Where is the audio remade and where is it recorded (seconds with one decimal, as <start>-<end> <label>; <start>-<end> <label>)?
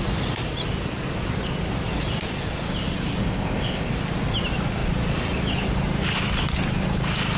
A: 0.0-3.2 recorded; 3.2-3.9 remade; 3.9-7.4 recorded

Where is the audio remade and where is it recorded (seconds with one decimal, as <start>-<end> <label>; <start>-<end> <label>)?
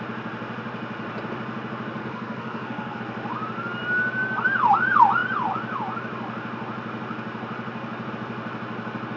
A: 0.0-2.0 recorded; 2.0-3.0 remade; 3.0-9.2 recorded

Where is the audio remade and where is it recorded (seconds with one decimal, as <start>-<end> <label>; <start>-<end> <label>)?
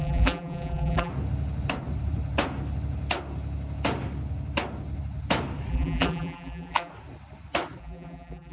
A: 0.0-1.1 remade; 1.1-5.7 recorded; 5.7-6.9 remade; 6.9-7.8 recorded; 7.8-8.5 remade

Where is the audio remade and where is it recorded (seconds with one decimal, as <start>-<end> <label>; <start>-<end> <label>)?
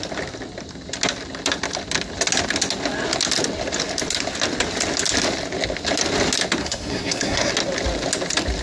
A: 0.0-6.6 recorded; 6.6-7.5 remade; 7.5-8.6 recorded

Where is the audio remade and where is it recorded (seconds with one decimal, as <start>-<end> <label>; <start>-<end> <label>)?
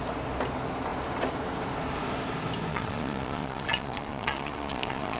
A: 0.0-2.7 recorded; 2.7-5.2 remade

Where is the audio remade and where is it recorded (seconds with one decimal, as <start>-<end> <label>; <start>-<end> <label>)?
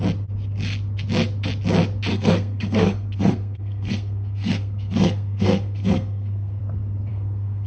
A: 0.0-2.1 recorded; 2.1-6.6 remade; 6.6-7.1 recorded; 7.1-7.7 remade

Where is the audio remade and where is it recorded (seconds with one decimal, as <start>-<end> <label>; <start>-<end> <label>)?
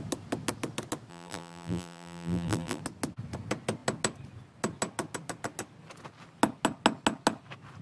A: 0.0-1.1 recorded; 1.1-2.8 remade; 2.8-7.8 recorded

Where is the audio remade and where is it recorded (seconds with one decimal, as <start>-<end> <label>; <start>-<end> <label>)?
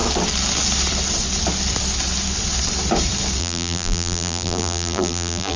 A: 0.0-3.4 recorded; 3.4-5.6 remade